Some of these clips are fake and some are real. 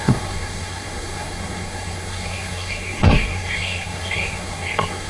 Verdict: fake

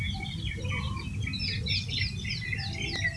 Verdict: real